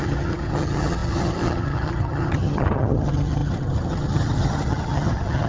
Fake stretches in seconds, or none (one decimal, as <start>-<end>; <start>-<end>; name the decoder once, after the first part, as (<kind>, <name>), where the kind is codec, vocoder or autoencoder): 0.0-5.5 (vocoder, HiFi-GAN)